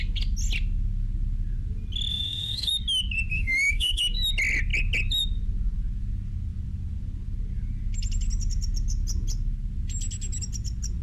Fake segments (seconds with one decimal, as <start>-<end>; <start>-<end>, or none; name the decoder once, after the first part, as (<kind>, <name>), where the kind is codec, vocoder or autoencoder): 2.1-2.7 (autoencoder, DAC-VAE); 3.3-4.0